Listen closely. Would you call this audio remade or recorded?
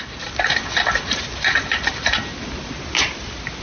recorded